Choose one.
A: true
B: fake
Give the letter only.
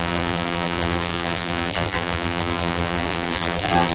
B